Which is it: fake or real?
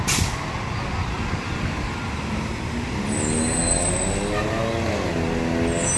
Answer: real